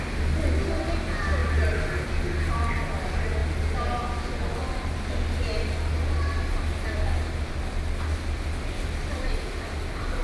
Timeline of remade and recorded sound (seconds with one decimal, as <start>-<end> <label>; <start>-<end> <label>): 0.0-10.2 recorded